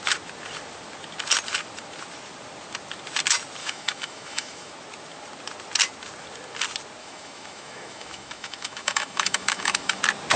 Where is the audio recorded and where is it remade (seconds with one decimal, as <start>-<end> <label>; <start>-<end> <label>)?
0.0-3.6 recorded; 3.6-4.7 remade; 4.7-7.0 recorded; 7.0-10.0 remade; 10.0-10.4 recorded